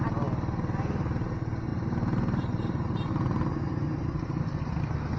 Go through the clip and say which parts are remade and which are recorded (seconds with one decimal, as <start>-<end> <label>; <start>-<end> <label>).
0.0-1.7 recorded; 1.7-4.8 remade; 4.8-5.2 recorded